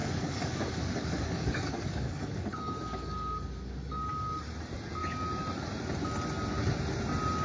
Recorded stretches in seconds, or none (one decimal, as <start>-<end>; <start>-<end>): 4.4-7.4